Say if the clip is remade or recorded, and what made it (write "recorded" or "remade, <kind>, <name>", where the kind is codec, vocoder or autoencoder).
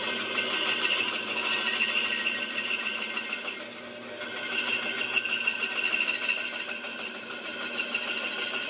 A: recorded